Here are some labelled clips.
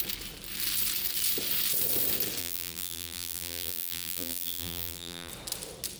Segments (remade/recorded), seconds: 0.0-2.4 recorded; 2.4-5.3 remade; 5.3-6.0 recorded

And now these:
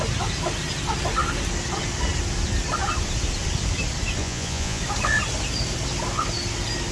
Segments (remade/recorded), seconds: 0.0-4.2 recorded; 4.2-4.8 remade; 4.8-6.9 recorded

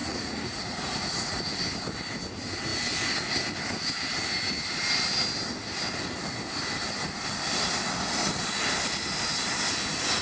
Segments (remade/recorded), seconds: 0.0-1.4 remade; 1.4-10.2 recorded

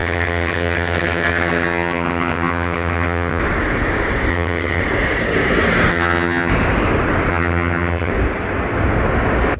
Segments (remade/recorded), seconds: 0.0-3.4 remade; 3.4-4.3 recorded; 4.3-4.8 remade; 4.8-5.9 recorded; 5.9-6.5 remade; 6.5-7.3 recorded; 7.3-8.1 remade; 8.1-9.6 recorded

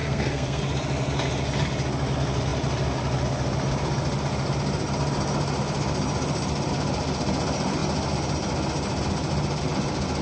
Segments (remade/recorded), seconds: 0.0-0.6 remade; 0.6-10.2 recorded

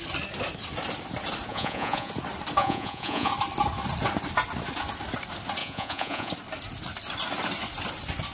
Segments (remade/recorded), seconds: 0.0-1.5 recorded; 1.5-2.1 remade; 2.1-2.6 recorded; 2.6-3.3 remade; 3.3-5.6 recorded; 5.6-6.3 remade; 6.3-8.3 recorded

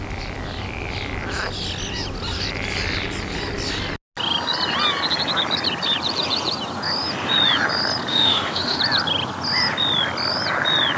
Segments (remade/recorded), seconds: 0.0-8.1 recorded; 8.1-8.8 remade; 8.8-11.0 recorded